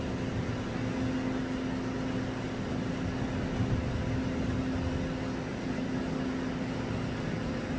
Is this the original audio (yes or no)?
yes